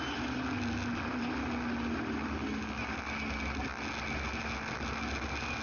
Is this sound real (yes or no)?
yes